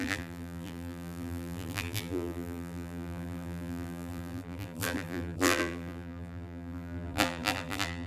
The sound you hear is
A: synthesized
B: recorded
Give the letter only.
A